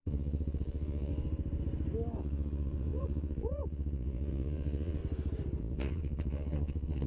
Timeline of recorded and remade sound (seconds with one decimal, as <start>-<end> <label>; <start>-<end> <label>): 0.0-1.1 remade; 1.1-2.2 recorded; 2.2-5.0 remade; 5.0-5.6 recorded; 5.6-7.1 remade